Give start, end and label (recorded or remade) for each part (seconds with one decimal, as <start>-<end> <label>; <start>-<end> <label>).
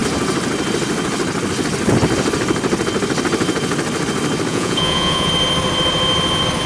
0.0-4.5 recorded; 4.5-5.3 remade; 5.3-6.7 recorded